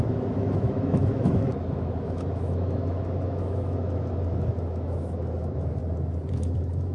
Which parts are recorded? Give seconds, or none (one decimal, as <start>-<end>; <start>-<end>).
5.8-6.3